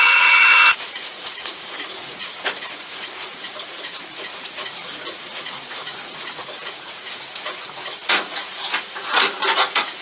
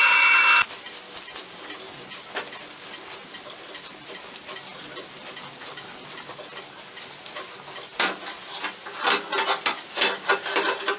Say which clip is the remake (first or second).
first